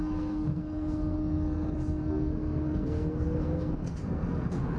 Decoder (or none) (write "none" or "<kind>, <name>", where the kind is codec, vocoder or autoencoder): codec, SNAC